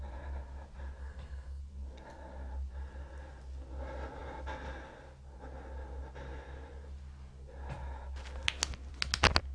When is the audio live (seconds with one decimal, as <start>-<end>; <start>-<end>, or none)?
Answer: 0.0-1.0; 1.6-9.5